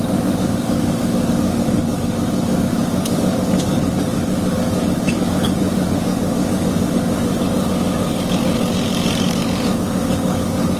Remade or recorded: remade